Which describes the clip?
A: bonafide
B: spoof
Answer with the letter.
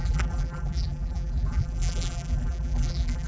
B